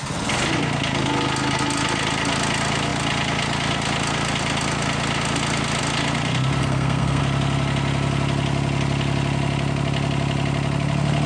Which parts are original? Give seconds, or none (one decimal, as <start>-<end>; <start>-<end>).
0.0-6.6; 7.2-11.3